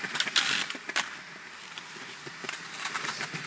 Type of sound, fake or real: real